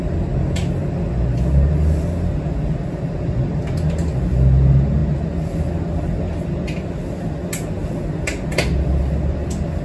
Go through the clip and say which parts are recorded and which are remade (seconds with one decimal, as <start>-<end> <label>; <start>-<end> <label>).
0.0-9.8 recorded